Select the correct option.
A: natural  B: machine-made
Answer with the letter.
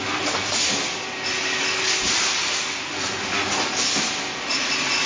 A